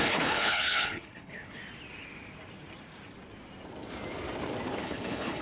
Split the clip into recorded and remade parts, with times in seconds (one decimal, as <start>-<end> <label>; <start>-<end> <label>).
0.0-1.6 remade; 1.6-4.8 recorded; 4.8-5.4 remade